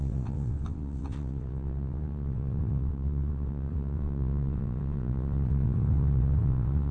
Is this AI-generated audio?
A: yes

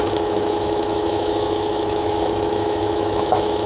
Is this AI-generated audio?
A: yes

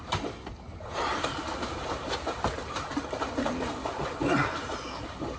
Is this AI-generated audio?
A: no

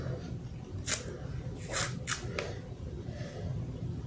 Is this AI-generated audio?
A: no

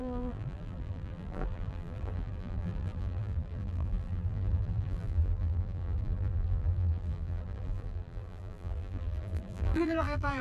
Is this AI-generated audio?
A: yes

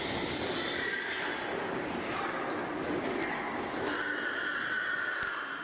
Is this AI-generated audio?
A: no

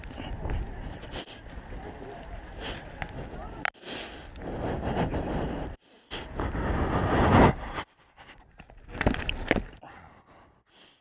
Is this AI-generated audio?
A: no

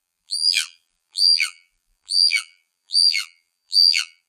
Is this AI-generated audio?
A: yes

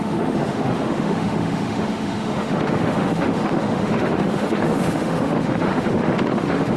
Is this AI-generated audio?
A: yes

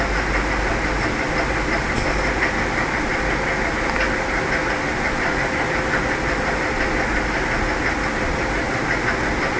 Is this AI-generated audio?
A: no